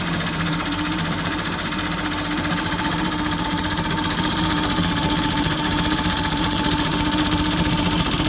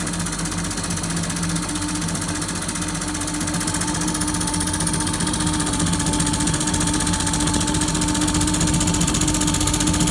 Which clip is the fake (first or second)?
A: first